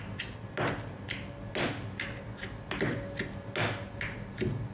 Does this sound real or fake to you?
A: real